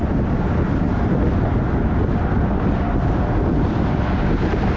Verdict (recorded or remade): recorded